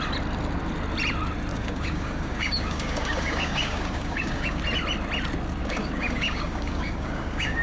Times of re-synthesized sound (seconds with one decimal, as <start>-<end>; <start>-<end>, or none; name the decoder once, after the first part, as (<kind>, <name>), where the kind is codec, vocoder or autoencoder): 1.5-4.6 (codec, DAC); 5.6-7.6